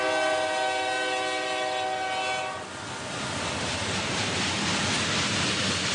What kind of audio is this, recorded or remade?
recorded